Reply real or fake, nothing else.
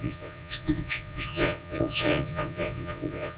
fake